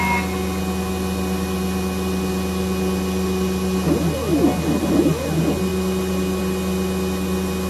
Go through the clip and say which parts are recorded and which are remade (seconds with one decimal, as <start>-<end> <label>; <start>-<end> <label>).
0.0-7.7 recorded